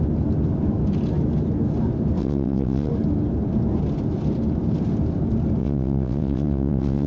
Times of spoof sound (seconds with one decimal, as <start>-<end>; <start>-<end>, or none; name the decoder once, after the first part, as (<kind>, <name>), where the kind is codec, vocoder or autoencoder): 2.2-2.9 (vocoder, WaveNeXt); 5.6-7.1